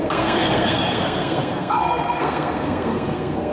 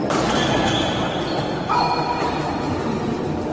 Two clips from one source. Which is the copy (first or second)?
first